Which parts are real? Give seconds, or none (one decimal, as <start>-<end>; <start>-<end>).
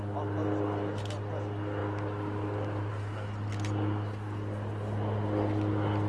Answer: 0.0-6.1